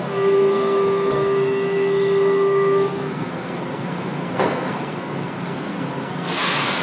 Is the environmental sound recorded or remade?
remade